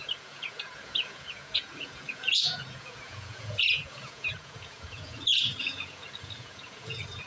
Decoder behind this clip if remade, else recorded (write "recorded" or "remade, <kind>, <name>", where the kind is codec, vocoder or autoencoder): remade, vocoder, Vocos